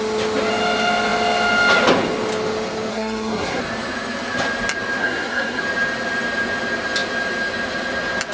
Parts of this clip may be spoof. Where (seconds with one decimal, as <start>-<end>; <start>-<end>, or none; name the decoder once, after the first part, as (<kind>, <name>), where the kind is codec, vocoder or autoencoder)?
2.9-3.6 (codec, SNAC); 5.0-5.6